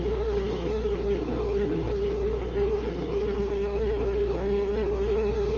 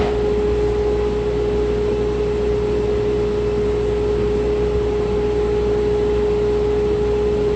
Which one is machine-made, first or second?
first